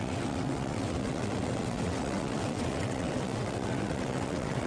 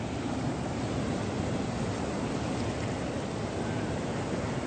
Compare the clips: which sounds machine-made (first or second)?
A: first